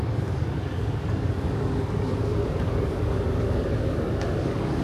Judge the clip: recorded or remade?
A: remade